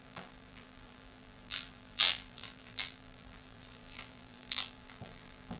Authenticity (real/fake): fake